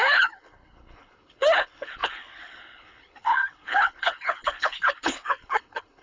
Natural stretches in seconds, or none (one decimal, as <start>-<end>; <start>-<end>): none